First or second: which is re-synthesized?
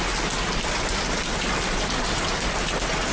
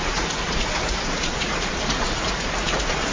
second